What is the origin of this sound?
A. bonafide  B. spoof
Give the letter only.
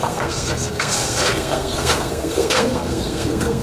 B